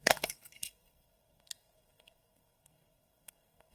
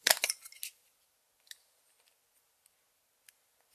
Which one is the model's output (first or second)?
first